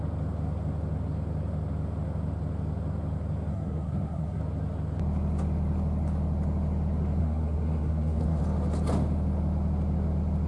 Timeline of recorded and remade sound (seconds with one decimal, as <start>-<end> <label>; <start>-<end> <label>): 0.0-3.5 recorded; 3.5-4.4 remade; 4.4-7.2 recorded; 7.2-8.4 remade; 8.4-10.5 recorded